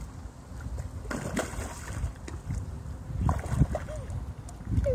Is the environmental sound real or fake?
real